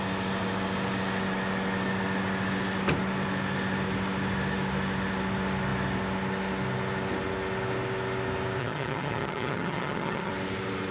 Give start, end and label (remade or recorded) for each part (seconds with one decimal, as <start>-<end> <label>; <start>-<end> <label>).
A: 0.0-8.6 recorded; 8.6-10.3 remade; 10.3-10.9 recorded